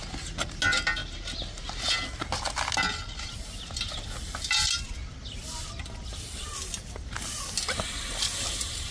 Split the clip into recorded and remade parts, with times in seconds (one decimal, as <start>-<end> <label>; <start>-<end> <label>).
0.0-8.9 recorded